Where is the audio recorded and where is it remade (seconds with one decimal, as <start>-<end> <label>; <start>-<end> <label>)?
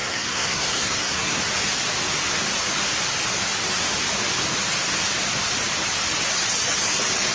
0.0-1.4 remade; 1.4-7.3 recorded